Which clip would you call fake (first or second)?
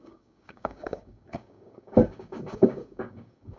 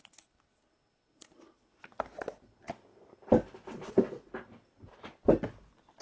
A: first